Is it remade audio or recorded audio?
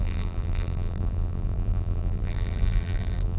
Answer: remade